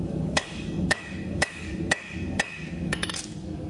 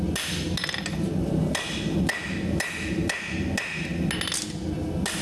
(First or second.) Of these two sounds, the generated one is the first